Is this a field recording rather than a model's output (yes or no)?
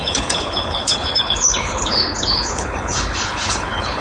no